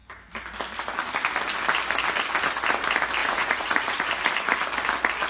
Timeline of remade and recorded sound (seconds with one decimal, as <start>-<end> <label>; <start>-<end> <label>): 0.0-3.2 recorded; 3.2-4.0 remade; 4.0-5.3 recorded